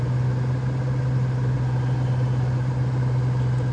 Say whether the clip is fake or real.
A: real